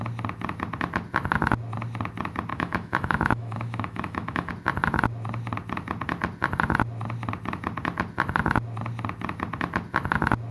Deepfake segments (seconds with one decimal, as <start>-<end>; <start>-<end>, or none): 2.5-4.5

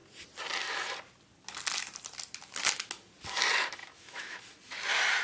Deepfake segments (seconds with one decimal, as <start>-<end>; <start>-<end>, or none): 3.8-4.4

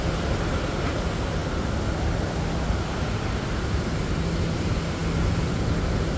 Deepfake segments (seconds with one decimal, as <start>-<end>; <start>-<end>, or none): none

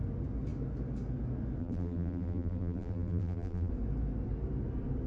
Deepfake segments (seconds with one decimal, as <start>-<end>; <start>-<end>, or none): 1.6-3.7

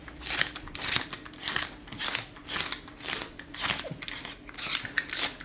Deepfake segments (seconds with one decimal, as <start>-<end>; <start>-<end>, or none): none